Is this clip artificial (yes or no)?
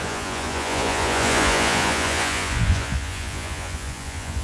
yes